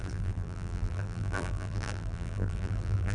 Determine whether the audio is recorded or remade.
remade